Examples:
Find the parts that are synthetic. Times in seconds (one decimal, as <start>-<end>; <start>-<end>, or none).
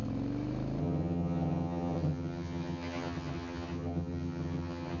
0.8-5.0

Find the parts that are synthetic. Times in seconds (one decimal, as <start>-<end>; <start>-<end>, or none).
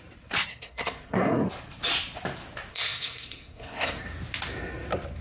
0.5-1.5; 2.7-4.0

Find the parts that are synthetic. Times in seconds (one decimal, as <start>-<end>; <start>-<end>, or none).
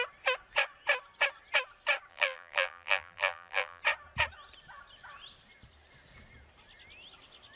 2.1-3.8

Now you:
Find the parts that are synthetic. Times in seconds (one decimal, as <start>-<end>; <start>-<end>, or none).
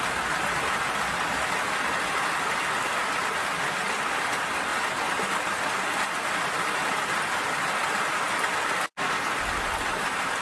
none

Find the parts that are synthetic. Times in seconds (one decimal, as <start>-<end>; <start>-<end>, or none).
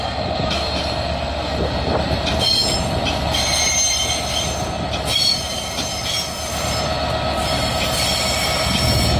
1.5-6.0